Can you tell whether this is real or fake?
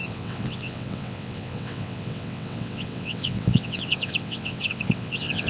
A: fake